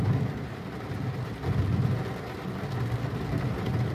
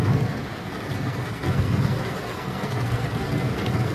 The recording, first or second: first